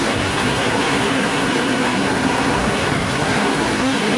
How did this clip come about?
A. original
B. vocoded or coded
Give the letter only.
B